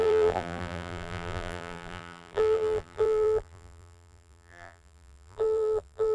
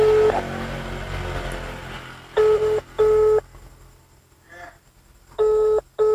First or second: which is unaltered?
second